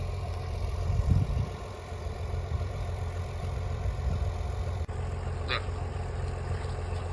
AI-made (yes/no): yes